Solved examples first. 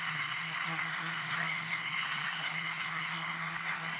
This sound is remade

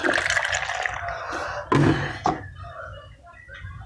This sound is recorded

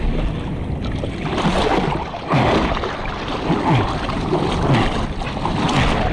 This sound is recorded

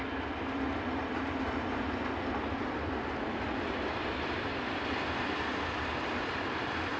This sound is remade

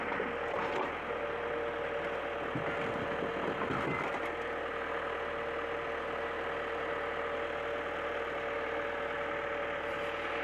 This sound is recorded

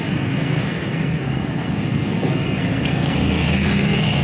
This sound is remade